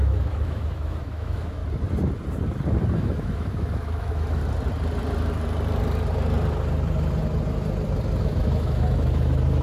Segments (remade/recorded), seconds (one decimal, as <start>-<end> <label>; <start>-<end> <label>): 0.0-1.6 remade; 1.6-2.8 recorded; 2.8-4.4 remade; 4.4-8.2 recorded; 8.2-9.6 remade